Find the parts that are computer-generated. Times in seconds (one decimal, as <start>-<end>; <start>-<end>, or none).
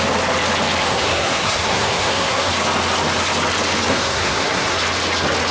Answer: 0.8-2.5; 3.9-4.8